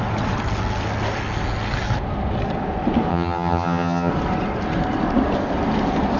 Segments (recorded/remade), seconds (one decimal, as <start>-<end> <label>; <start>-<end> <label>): 0.0-3.1 recorded; 3.1-4.1 remade; 4.1-6.2 recorded